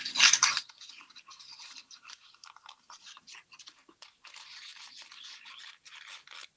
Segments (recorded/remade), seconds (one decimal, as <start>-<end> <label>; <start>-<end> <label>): 0.0-1.3 recorded; 1.3-3.2 remade; 3.2-6.6 recorded